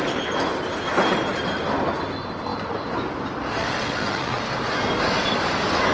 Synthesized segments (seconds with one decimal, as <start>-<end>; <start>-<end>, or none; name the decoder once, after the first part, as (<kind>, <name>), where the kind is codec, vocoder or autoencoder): 3.6-4.4 (vocoder, WaveNeXt)